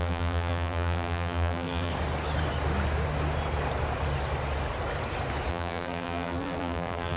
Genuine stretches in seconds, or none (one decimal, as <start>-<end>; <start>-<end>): 1.9-5.5